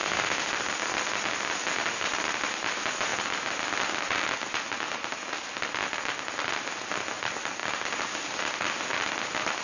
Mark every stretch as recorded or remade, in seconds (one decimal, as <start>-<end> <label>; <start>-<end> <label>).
0.0-0.5 remade; 0.5-9.6 recorded